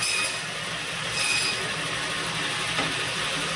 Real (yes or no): yes